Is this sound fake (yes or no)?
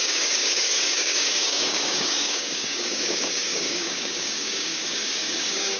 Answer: yes